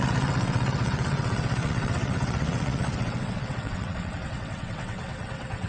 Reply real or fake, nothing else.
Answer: fake